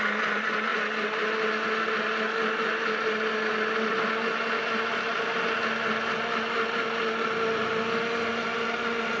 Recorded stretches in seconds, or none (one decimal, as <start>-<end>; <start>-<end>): 0.0-9.2